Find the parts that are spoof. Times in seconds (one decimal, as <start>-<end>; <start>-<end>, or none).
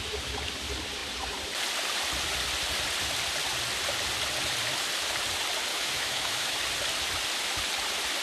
5.7-6.6